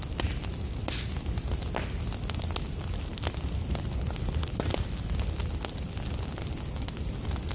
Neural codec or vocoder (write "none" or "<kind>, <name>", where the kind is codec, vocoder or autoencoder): none